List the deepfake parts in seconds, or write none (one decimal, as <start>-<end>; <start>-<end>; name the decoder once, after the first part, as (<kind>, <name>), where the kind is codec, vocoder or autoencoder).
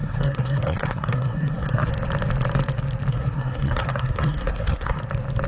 0.0-1.9 (codec, SNAC); 3.1-5.0